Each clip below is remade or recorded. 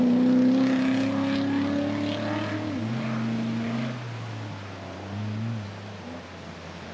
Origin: recorded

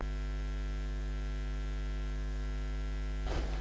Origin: recorded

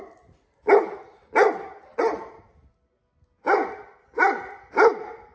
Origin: recorded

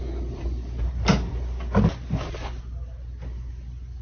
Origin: recorded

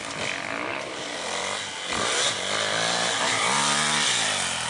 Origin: recorded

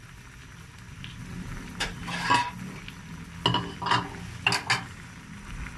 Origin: recorded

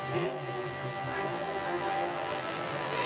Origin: remade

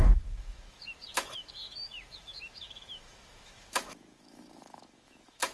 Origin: remade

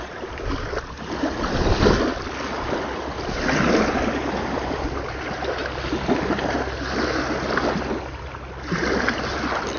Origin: recorded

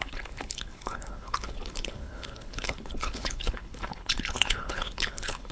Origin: remade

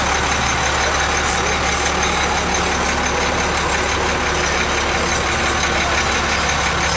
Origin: recorded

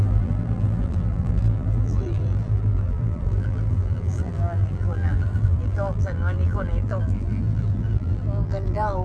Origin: remade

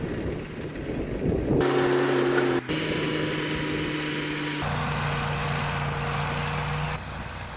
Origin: recorded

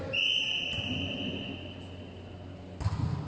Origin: recorded